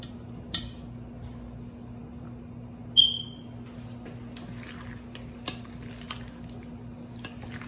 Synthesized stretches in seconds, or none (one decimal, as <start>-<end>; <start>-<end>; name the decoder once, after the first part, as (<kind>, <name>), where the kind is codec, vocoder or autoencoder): none